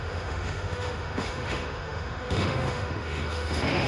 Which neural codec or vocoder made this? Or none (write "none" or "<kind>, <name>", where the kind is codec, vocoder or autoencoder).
autoencoder, DAC-VAE